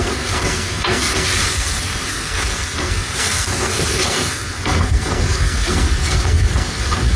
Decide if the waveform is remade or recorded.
remade